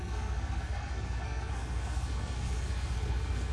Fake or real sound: fake